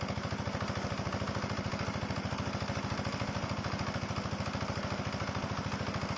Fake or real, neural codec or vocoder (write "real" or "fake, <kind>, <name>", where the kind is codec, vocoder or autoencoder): real